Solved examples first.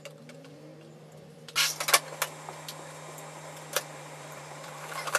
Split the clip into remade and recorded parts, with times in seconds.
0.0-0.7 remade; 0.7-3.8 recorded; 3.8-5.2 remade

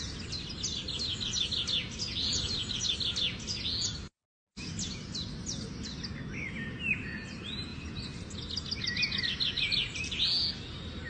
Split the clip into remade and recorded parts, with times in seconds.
0.0-11.1 recorded

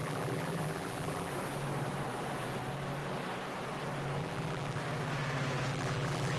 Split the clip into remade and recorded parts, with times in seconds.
0.0-1.3 remade; 1.3-4.2 recorded; 4.2-4.8 remade; 4.8-5.7 recorded; 5.7-6.4 remade

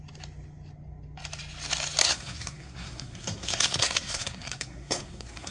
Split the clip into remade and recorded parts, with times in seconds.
0.0-2.0 recorded; 2.0-5.5 remade

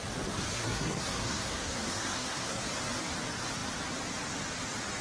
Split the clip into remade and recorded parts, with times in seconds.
0.0-0.5 recorded; 0.5-2.6 remade; 2.6-5.0 recorded

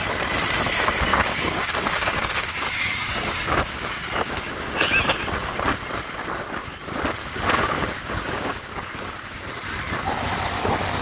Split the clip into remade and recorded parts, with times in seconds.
0.0-1.1 recorded; 1.1-4.7 remade; 4.7-7.2 recorded; 7.2-9.5 remade; 9.5-11.0 recorded

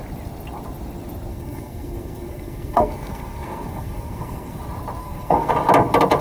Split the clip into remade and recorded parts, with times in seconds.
0.0-1.3 recorded; 1.3-4.6 remade; 4.6-5.0 recorded; 5.0-5.5 remade; 5.5-6.2 recorded

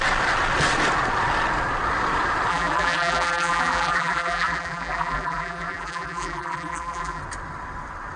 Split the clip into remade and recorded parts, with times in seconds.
0.0-2.5 recorded; 2.5-7.2 remade; 7.2-8.2 recorded